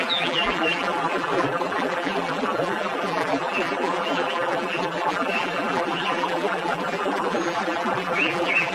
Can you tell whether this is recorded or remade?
remade